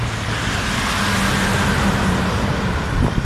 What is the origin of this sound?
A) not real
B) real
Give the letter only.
B